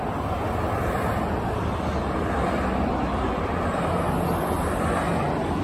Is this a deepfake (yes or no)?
no